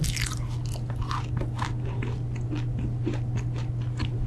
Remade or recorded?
recorded